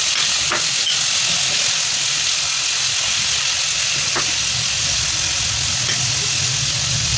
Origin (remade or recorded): recorded